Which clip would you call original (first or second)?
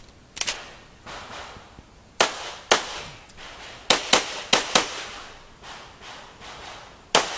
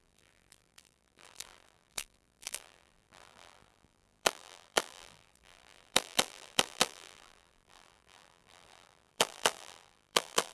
first